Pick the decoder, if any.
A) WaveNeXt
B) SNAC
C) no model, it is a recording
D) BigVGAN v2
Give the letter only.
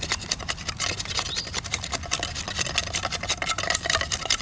C